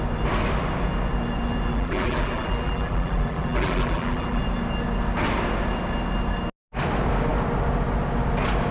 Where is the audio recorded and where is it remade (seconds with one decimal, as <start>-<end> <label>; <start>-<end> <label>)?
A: 0.0-1.7 recorded; 1.7-4.4 remade; 4.4-8.7 recorded

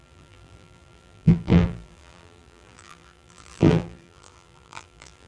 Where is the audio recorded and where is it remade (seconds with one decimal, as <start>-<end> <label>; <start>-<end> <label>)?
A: 0.0-5.3 remade